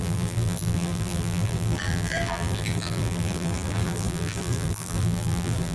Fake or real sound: fake